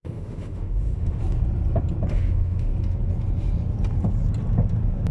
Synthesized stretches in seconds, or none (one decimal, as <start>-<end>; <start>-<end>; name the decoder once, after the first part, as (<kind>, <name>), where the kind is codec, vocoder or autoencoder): 0.0-1.2 (autoencoder, DAC-VAE); 2.1-2.7